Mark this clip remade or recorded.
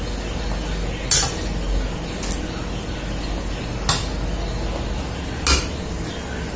recorded